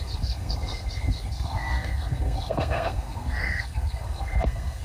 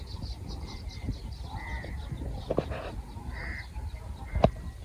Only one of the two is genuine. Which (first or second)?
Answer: second